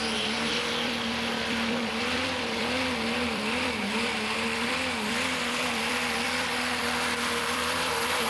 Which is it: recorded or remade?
remade